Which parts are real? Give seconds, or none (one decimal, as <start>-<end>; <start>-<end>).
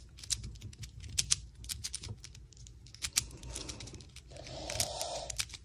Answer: 0.0-5.6